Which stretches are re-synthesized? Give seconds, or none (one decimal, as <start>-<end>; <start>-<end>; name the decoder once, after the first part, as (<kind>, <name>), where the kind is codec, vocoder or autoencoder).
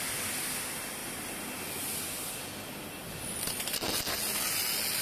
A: none